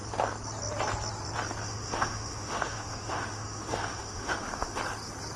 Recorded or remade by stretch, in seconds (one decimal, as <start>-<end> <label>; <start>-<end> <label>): 0.0-1.6 recorded; 1.6-4.8 remade; 4.8-5.4 recorded